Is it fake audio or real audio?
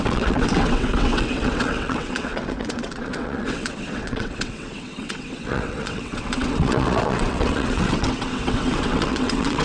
fake